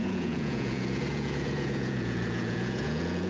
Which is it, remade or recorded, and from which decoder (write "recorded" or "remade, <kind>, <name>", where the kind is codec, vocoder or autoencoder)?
remade, vocoder, Vocos